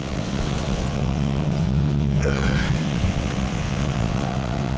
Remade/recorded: remade